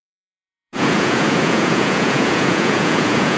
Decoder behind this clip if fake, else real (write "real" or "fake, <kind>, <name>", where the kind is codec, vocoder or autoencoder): fake, vocoder, Vocos